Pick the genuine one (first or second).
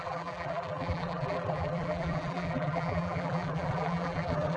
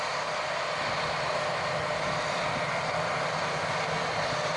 second